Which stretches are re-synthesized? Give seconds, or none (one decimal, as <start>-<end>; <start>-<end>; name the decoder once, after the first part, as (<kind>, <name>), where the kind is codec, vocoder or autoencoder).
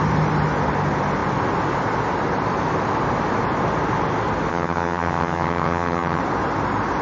4.5-6.2 (vocoder, HiFi-GAN)